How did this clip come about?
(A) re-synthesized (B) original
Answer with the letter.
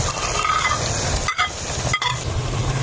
B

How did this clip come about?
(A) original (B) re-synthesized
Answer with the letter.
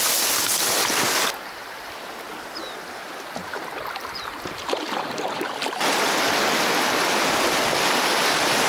A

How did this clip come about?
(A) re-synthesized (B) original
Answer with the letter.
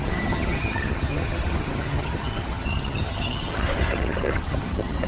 A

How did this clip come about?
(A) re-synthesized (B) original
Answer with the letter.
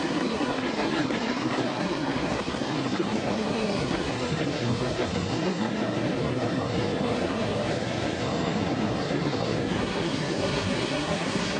A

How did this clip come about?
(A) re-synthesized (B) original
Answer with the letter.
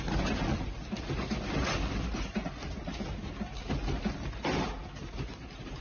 B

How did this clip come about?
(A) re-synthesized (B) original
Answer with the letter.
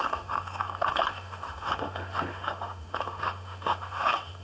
A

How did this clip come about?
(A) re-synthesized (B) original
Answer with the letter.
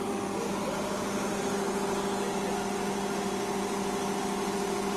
B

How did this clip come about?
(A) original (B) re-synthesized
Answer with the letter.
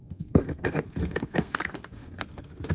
B